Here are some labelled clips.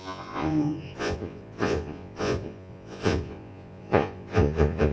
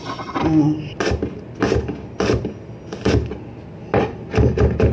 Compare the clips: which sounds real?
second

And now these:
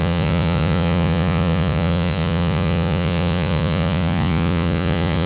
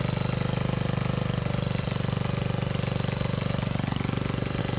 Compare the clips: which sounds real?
second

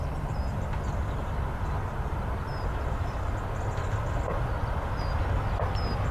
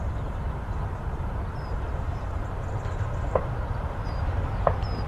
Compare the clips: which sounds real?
first